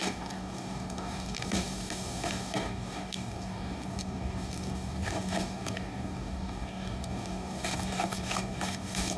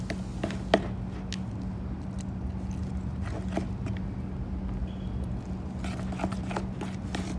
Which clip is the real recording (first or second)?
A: second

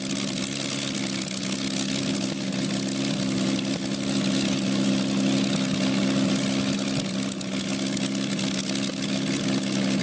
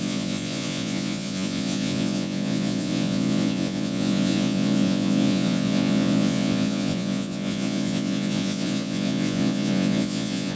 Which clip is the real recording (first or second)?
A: first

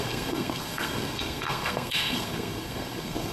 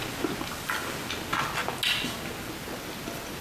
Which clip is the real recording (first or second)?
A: second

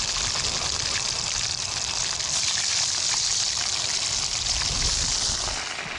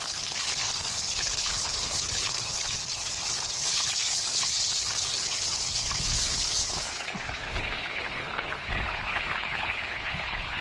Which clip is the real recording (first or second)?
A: first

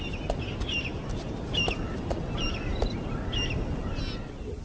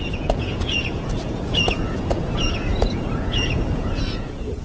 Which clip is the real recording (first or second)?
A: first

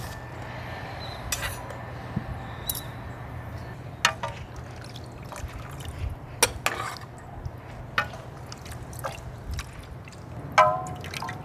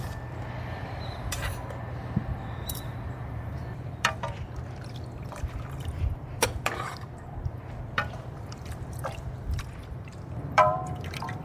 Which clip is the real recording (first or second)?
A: first